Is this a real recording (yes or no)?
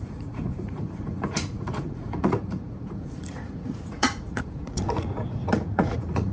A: no